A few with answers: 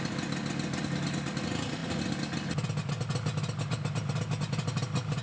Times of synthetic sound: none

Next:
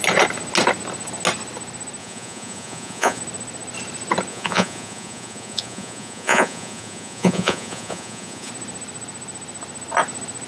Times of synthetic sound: 2.0-3.2 (vocoder, Vocos); 4.3-8.5

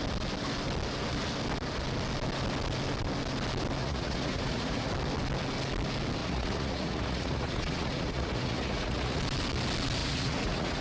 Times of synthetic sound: 3.8-4.9 (vocoder, Vocos); 6.2-9.2; 10.0-10.8

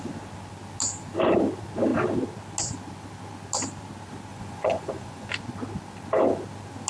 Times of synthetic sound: 4.3-5.3 (vocoder, Vocos)